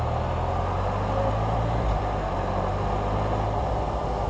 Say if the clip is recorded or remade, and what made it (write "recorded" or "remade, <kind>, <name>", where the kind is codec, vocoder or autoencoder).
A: recorded